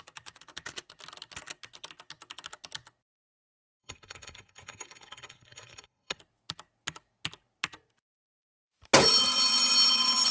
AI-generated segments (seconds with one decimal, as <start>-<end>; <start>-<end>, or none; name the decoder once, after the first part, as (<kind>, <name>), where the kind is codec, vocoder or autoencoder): 3.8-6.2 (codec, SNAC)